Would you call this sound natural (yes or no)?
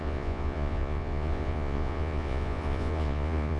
no